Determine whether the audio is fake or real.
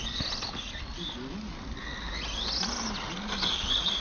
real